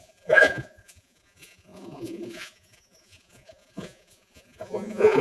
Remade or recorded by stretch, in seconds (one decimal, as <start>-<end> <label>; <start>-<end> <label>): 0.0-5.2 remade